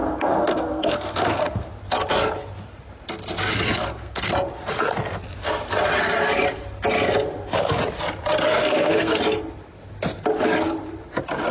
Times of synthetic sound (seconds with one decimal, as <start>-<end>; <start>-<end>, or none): 0.0-1.7; 3.8-4.3; 8.5-9.2